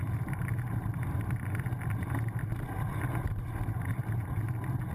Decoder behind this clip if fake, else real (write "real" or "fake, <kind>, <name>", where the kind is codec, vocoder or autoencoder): fake, vocoder, BigVGAN v2